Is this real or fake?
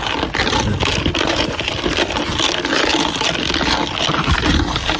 real